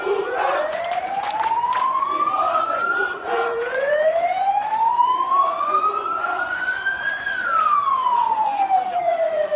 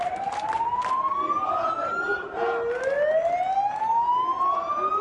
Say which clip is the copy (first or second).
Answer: first